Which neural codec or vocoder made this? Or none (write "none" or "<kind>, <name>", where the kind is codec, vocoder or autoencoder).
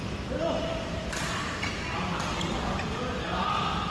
none